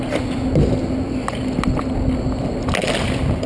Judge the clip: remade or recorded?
recorded